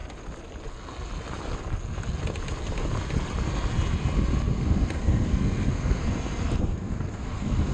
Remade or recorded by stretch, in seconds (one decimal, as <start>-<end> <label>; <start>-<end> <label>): 0.0-4.5 recorded; 4.5-6.0 remade; 6.0-6.6 recorded; 6.6-7.7 remade